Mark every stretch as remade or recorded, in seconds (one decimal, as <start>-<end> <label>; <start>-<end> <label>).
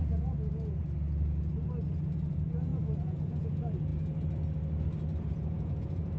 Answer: 0.0-0.8 remade; 0.8-2.3 recorded; 2.3-3.9 remade; 3.9-5.3 recorded; 5.3-6.2 remade